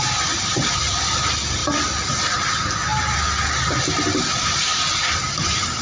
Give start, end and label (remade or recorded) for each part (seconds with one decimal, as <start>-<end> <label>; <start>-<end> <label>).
0.0-5.8 recorded